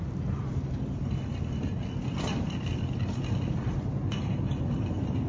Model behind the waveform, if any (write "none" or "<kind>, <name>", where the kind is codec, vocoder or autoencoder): none